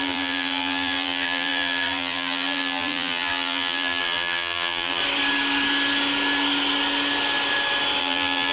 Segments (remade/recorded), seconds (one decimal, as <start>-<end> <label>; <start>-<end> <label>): 0.0-5.0 remade; 5.0-8.0 recorded; 8.0-8.5 remade